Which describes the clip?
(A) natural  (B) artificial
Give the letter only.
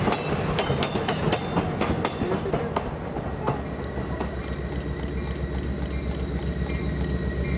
A